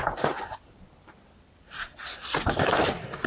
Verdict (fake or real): fake